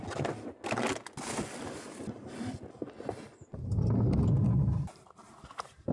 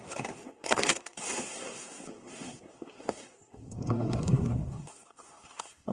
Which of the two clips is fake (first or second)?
second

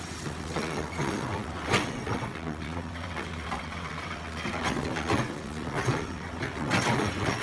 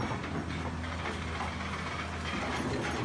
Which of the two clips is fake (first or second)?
first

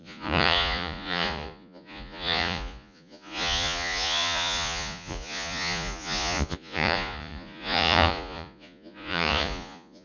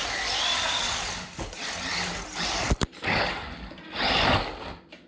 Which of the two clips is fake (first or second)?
first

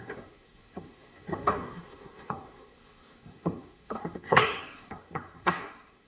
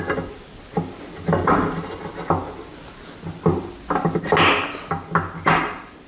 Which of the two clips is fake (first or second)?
first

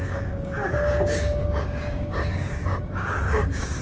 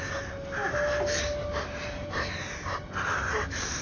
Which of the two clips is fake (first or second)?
first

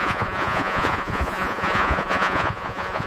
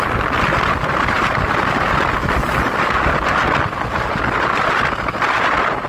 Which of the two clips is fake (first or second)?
first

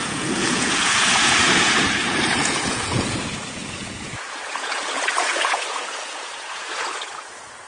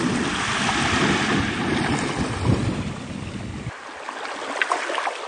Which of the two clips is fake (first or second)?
first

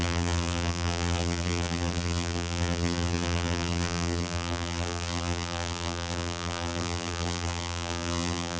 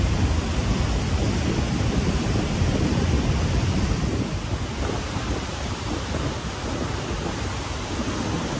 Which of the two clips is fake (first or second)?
first